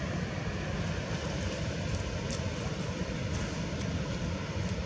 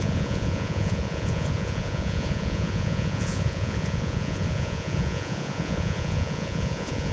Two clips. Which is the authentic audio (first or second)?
first